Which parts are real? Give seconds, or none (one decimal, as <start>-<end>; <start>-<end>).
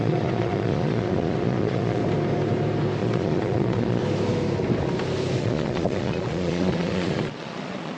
2.0-3.0; 4.0-5.4